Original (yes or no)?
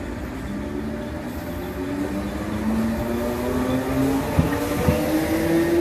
yes